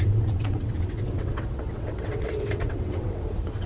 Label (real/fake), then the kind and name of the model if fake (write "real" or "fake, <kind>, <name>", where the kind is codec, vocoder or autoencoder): fake, vocoder, WaveNeXt